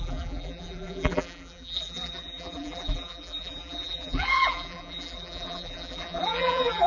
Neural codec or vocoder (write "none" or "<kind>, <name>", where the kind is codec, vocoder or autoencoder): vocoder, BigVGAN v2